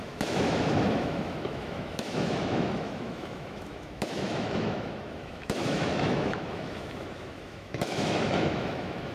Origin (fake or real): fake